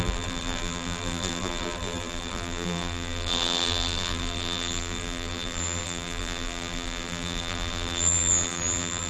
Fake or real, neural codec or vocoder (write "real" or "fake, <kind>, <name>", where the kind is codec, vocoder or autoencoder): fake, vocoder, BigVGAN v2